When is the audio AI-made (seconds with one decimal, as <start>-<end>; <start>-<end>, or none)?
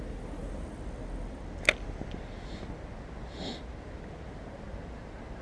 none